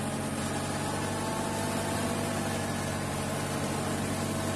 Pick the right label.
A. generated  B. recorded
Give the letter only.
B